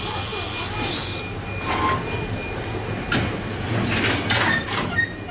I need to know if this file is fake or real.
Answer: real